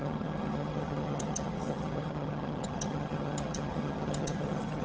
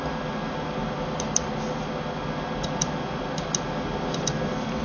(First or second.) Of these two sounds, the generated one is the first